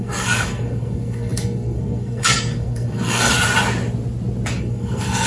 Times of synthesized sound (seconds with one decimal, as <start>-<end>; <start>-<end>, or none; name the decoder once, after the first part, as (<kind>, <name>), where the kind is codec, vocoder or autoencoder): 0.0-3.3 (codec, SNAC); 4.6-5.3